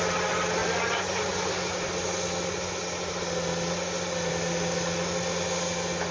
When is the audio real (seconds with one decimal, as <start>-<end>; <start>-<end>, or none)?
0.0-6.1